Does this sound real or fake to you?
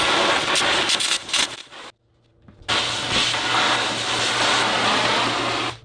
real